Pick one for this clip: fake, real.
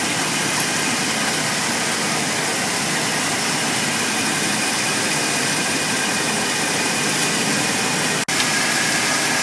real